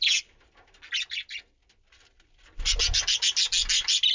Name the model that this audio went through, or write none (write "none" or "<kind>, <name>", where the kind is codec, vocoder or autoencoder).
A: none